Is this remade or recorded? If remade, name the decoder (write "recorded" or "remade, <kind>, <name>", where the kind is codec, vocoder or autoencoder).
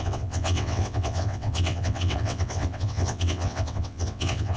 remade, vocoder, WaveNeXt